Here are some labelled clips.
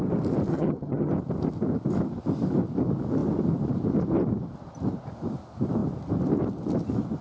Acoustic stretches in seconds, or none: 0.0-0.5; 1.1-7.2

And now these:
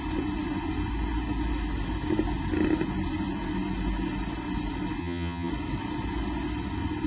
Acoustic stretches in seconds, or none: 0.0-5.0; 5.5-7.1

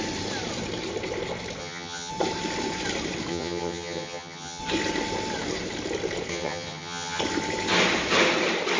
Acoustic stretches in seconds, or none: 0.0-1.6; 2.1-3.3; 4.6-6.3; 7.2-8.8

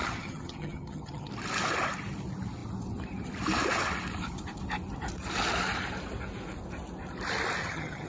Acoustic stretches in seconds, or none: 1.3-7.6

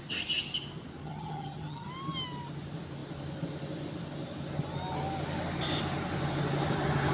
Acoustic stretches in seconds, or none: 0.0-1.0; 1.9-7.1